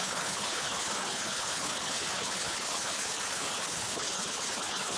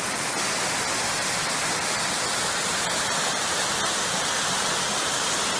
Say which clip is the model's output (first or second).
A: first